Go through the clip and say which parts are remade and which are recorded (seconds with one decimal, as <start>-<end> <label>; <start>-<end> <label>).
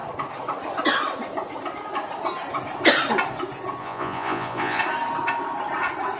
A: 0.0-3.8 recorded; 3.8-4.8 remade; 4.8-6.2 recorded